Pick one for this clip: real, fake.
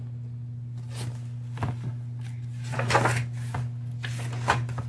real